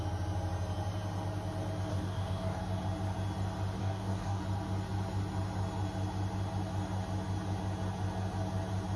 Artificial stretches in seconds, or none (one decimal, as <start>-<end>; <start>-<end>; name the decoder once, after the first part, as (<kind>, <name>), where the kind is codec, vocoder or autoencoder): 1.9-2.6 (codec, DAC); 3.8-4.4